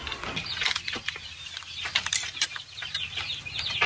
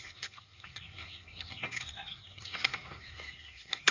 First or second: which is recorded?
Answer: first